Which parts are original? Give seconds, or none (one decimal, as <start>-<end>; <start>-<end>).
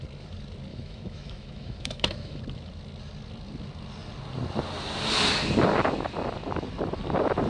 0.0-0.7; 2.4-7.5